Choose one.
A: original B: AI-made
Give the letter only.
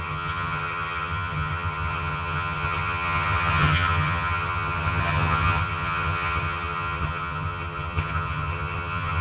B